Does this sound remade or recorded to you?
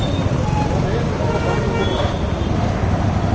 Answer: recorded